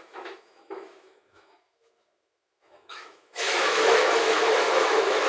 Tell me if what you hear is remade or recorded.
remade